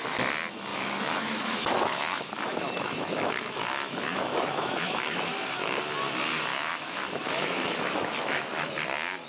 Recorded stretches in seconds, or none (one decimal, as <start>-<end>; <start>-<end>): 0.0-0.7; 5.8-6.5; 8.7-9.3